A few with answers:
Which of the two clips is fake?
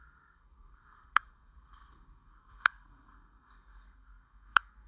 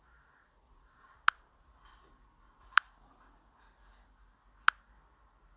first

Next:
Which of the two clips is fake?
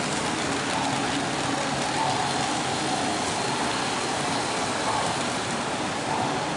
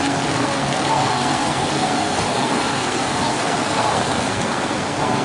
second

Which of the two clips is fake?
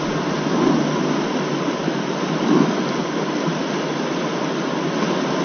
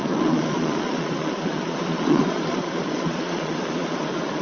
second